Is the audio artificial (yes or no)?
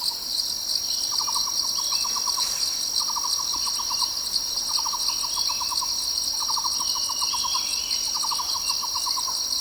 no